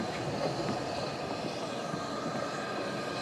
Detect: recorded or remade recorded